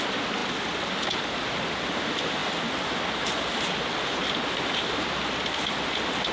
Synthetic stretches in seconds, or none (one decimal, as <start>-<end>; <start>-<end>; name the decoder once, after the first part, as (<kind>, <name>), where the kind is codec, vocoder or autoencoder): none